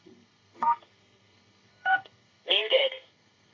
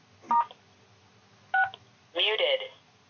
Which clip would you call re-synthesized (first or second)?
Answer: first